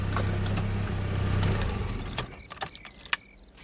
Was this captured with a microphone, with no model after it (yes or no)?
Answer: yes